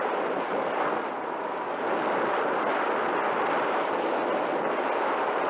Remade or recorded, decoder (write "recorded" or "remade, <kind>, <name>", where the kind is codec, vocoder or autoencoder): recorded